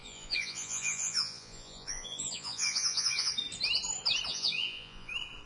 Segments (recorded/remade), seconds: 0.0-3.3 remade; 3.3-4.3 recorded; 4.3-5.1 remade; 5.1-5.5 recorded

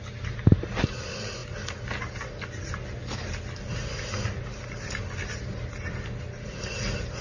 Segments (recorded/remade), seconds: 0.0-7.2 recorded